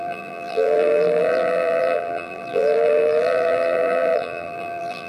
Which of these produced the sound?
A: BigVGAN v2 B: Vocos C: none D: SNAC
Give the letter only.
A